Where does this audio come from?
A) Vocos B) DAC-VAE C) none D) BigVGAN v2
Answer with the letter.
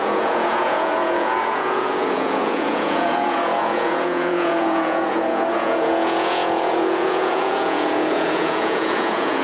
A